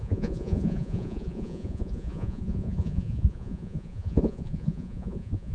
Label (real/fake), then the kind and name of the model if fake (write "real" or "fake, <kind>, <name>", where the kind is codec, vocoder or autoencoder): fake, vocoder, Vocos